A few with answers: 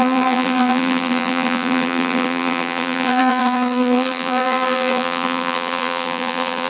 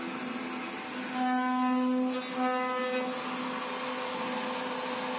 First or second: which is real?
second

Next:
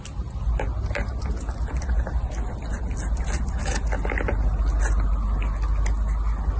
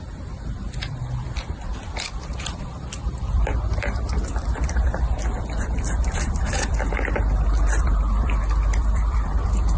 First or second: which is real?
first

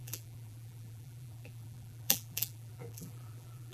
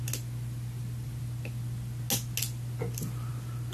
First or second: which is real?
second